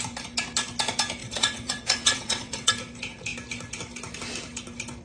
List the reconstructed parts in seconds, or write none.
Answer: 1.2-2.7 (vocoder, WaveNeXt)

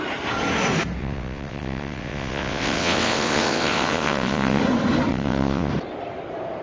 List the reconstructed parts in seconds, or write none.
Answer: 1.0-4.6 (vocoder, WaveNeXt); 5.1-5.7

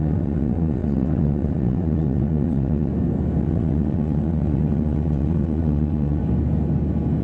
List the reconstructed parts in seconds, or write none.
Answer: 0.0-2.9 (vocoder, WaveNeXt); 3.4-6.2

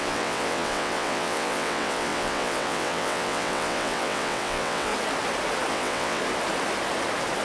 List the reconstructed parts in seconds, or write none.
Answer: 0.0-4.9 (vocoder, WaveNeXt); 5.7-6.2

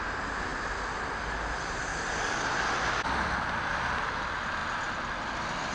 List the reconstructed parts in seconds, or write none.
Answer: none

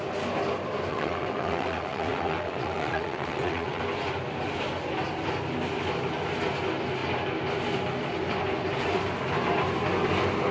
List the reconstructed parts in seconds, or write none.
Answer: 0.9-3.8 (vocoder, WaveNeXt)

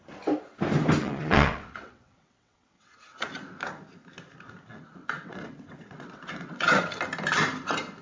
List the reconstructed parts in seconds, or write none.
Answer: 1.0-2.9 (vocoder, WaveNeXt); 5.0-6.8